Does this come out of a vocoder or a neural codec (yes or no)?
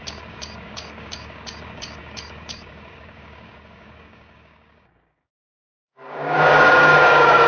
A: yes